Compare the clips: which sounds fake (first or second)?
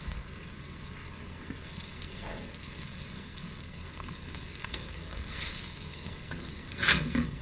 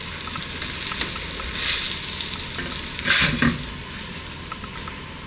first